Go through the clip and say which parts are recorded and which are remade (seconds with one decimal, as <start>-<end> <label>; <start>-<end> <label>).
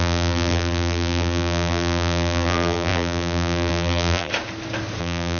0.0-4.3 remade; 4.3-5.0 recorded; 5.0-5.4 remade